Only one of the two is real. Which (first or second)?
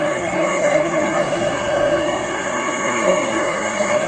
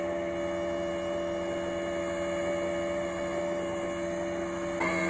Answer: second